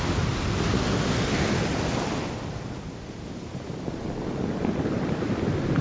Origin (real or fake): real